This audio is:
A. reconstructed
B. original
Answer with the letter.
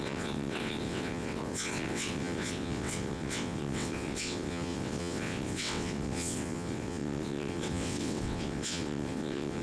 A